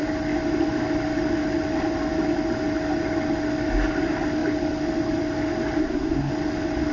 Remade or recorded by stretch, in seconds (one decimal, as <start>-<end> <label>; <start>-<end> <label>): 0.0-5.8 recorded; 5.8-6.3 remade; 6.3-6.9 recorded